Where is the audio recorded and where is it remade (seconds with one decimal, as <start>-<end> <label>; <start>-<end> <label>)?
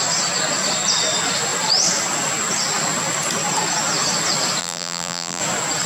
0.0-4.6 recorded; 4.6-5.4 remade; 5.4-5.9 recorded